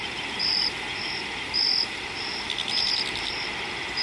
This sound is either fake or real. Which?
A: real